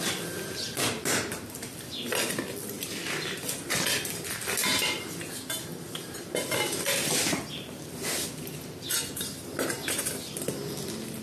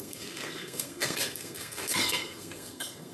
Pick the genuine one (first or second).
first